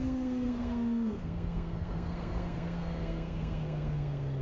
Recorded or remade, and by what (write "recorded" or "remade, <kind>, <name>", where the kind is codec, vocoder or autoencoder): remade, codec, SNAC